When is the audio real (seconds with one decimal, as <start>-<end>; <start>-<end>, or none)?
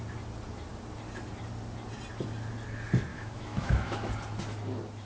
0.0-3.1; 4.1-5.1